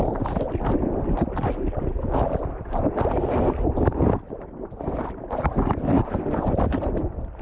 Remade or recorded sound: recorded